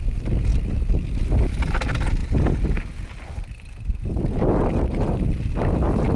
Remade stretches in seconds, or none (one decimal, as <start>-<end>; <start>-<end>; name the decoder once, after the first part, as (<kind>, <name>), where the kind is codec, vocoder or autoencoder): none

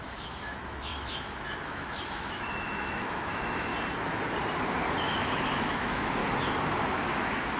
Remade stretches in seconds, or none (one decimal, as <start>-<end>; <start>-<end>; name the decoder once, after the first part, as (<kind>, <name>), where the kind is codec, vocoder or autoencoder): 0.0-3.7 (autoencoder, DAC-VAE); 5.0-6.2

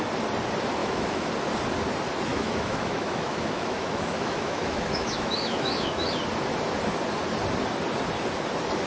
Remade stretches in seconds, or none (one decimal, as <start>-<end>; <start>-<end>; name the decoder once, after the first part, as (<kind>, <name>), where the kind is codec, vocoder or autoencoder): 0.8-1.3 (autoencoder, DAC-VAE); 2.3-6.1